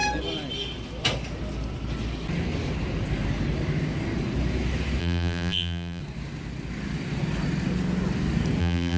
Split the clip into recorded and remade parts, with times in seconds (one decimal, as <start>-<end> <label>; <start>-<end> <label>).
0.0-5.0 recorded; 5.0-6.0 remade; 6.0-8.6 recorded; 8.6-9.0 remade